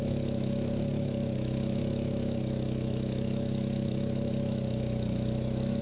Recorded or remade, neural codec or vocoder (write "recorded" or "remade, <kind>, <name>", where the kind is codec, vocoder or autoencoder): remade, autoencoder, DAC-VAE